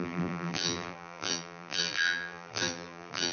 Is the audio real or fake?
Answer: fake